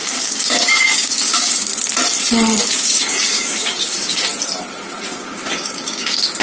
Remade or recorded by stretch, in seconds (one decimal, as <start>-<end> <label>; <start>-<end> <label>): 0.0-1.7 remade; 1.7-2.6 recorded; 2.6-4.3 remade; 4.3-5.1 recorded; 5.1-6.4 remade